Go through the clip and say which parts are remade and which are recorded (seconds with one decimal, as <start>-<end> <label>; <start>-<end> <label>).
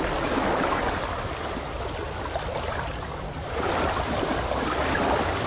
0.0-2.0 recorded; 2.0-5.5 remade